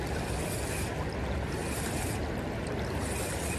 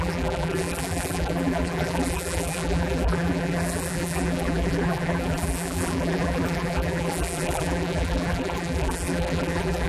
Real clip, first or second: first